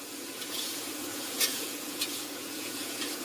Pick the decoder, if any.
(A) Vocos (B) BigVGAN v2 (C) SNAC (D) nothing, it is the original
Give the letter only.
A